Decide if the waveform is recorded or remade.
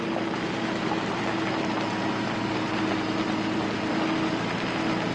recorded